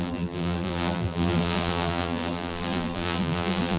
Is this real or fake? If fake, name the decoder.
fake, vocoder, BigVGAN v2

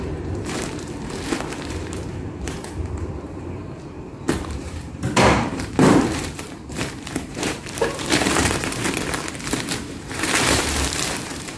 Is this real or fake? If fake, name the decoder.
fake, vocoder, BigVGAN v2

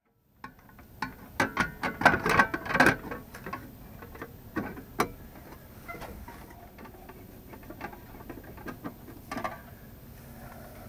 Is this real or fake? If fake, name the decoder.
real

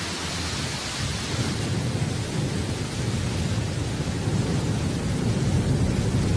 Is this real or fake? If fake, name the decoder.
real